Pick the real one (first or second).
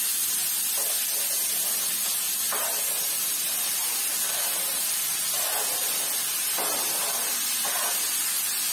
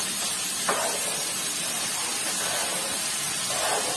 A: first